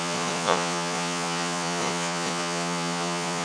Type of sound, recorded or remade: remade